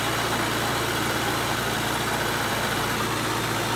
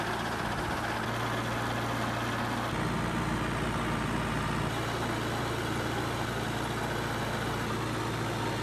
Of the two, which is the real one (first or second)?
second